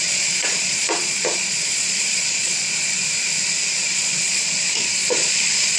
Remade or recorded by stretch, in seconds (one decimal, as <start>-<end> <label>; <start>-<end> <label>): 0.0-3.0 remade; 3.0-3.7 recorded; 3.7-5.8 remade